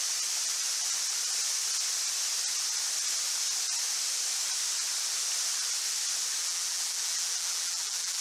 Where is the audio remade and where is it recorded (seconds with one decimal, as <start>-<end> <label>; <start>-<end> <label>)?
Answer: 0.0-6.4 recorded; 6.4-8.2 remade